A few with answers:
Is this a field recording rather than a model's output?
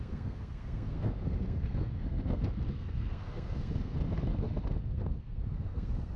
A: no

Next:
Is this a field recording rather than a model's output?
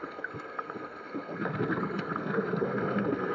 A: no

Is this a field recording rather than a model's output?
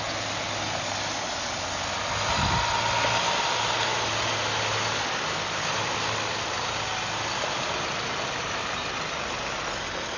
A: yes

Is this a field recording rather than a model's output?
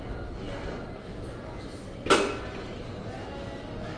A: yes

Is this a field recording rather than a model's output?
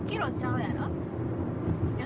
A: yes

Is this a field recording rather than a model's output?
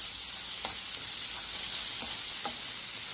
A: yes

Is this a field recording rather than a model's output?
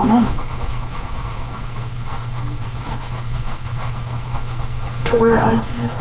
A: no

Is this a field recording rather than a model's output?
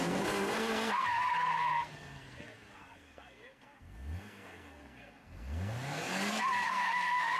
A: no